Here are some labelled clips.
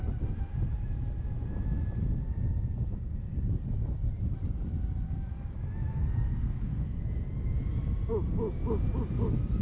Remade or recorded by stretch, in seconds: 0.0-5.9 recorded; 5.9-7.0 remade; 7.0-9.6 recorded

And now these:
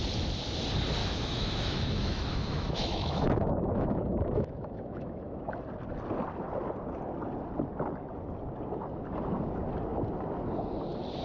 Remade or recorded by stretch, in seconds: 0.0-1.0 recorded; 1.0-5.5 remade; 5.5-11.2 recorded

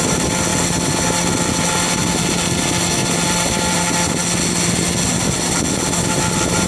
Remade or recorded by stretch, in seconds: 0.0-6.7 recorded

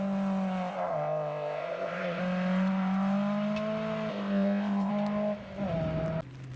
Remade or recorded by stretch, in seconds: 0.0-0.7 recorded; 0.7-2.2 remade; 2.2-4.1 recorded; 4.1-4.9 remade; 4.9-6.6 recorded

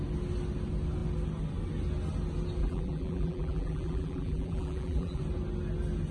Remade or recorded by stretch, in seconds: 0.0-2.6 recorded; 2.6-5.2 remade; 5.2-6.1 recorded